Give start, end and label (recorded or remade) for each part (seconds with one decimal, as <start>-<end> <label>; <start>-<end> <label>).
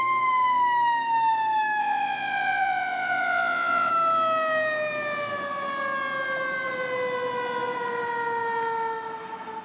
0.0-1.8 recorded; 1.8-3.9 remade; 3.9-9.6 recorded